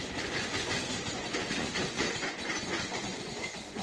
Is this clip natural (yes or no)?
no